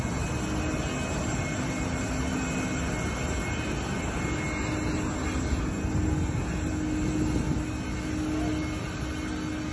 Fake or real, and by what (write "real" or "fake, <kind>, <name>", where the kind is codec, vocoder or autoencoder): real